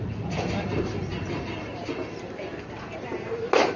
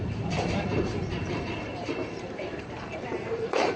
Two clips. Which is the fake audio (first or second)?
second